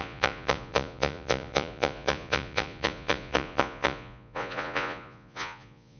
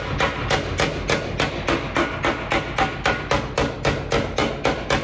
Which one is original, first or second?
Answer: second